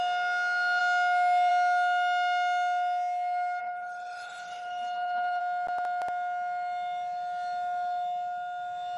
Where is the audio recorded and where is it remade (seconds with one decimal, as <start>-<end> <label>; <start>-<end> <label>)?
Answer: 0.0-3.6 recorded; 3.6-5.4 remade; 5.4-9.0 recorded